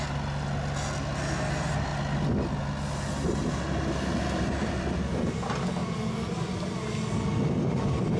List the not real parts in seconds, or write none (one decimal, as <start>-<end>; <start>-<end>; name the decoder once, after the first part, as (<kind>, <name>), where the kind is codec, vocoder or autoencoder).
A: none